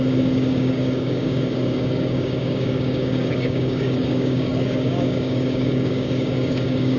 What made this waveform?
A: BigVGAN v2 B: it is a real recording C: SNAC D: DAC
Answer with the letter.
D